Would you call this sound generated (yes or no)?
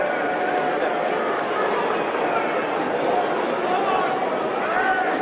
no